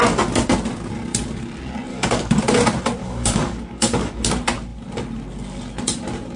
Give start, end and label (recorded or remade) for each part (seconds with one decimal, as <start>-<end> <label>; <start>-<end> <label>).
0.0-1.9 recorded; 1.9-2.4 remade; 2.4-3.0 recorded; 3.0-4.2 remade; 4.2-6.4 recorded